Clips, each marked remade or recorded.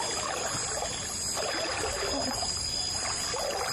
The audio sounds recorded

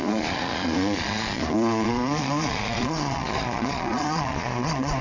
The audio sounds remade